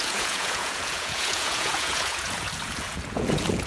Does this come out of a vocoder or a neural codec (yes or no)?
yes